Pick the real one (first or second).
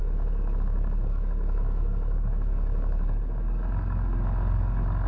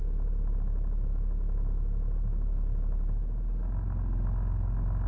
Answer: second